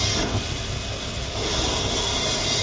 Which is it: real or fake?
real